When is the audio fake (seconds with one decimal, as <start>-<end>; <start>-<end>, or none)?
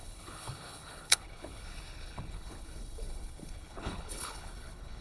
0.0-5.0